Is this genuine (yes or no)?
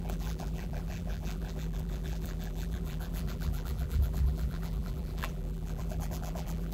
no